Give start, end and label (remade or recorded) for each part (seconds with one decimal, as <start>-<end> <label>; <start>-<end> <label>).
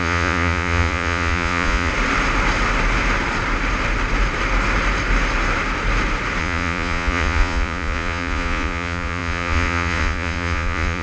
0.0-1.9 remade; 1.9-6.4 recorded; 6.4-11.0 remade